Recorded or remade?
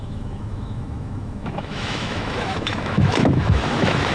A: remade